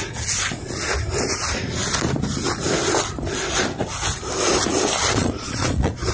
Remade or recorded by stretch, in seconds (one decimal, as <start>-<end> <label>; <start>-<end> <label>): 0.0-5.2 recorded; 5.2-6.1 remade